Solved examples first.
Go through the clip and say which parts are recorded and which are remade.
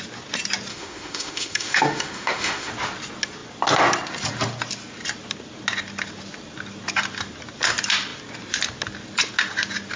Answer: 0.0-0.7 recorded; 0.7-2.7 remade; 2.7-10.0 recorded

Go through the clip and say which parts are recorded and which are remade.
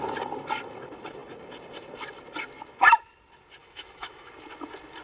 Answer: 0.0-3.6 recorded; 3.6-4.3 remade; 4.3-5.0 recorded